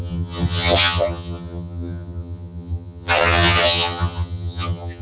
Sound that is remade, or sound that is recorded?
remade